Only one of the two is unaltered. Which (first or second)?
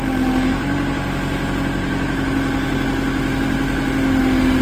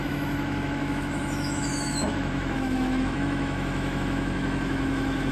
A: first